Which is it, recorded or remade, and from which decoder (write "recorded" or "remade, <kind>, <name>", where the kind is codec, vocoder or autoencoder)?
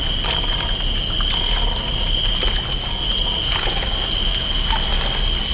recorded